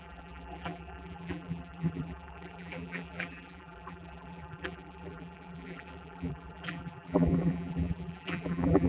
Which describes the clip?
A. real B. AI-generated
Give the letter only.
B